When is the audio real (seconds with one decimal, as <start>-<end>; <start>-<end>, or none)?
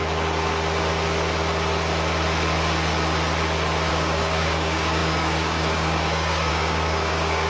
0.0-3.9